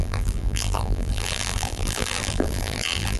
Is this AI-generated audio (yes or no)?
yes